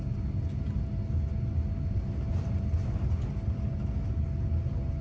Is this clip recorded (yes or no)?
yes